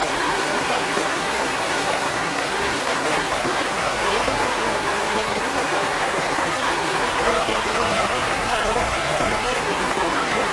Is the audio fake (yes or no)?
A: yes